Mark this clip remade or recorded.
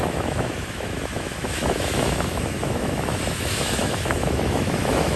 remade